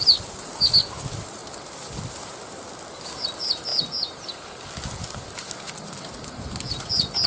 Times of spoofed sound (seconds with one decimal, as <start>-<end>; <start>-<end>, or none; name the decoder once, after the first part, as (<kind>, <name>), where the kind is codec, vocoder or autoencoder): none